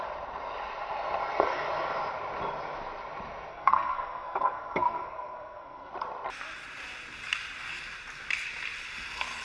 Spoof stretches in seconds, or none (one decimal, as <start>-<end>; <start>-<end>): 3.5-5.9